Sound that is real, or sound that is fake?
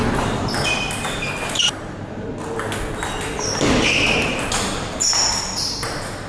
real